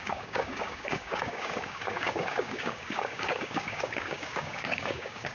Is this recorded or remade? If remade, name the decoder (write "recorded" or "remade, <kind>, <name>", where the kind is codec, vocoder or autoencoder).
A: remade, codec, DAC